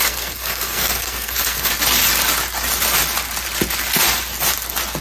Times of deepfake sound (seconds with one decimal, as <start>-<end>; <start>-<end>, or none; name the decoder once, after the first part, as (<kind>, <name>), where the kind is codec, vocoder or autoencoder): 0.0-1.7 (codec, SNAC)